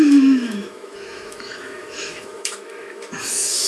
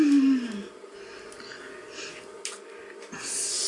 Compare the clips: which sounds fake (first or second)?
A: first